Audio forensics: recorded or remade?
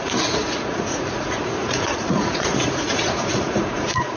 remade